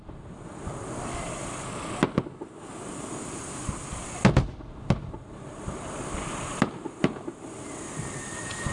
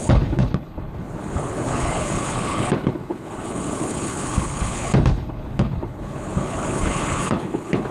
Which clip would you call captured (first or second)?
first